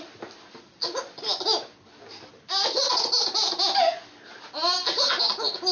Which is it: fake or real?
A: real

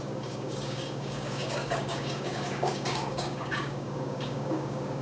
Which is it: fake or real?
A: fake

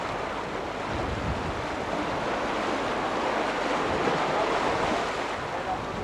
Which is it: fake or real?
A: real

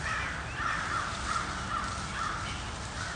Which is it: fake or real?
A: real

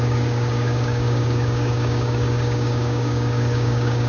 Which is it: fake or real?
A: fake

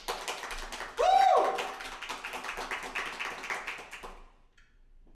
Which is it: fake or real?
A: real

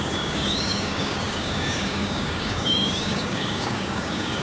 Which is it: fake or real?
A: fake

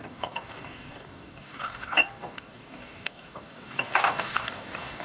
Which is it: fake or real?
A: fake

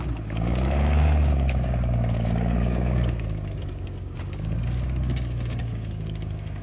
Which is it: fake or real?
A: fake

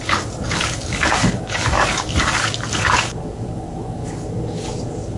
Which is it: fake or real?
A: fake